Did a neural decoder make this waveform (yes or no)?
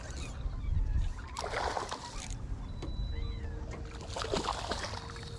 no